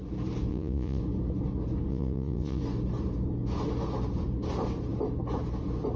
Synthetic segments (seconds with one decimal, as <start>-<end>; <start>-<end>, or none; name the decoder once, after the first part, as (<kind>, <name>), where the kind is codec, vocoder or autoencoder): 0.5-1.0 (vocoder, Vocos); 1.9-2.6